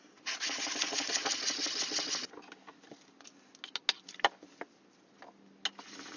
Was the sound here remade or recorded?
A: recorded